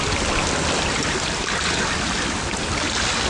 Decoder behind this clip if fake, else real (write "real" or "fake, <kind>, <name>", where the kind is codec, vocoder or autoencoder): real